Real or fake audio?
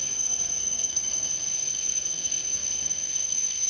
fake